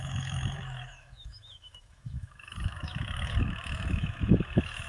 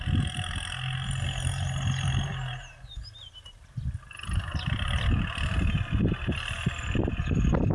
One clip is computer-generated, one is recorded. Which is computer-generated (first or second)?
first